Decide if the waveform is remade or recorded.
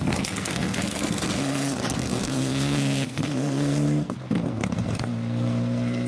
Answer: remade